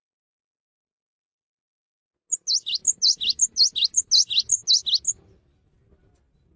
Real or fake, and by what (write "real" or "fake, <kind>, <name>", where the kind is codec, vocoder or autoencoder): real